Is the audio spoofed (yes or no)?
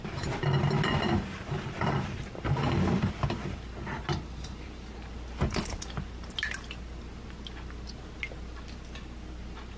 no